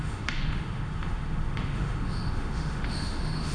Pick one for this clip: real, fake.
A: fake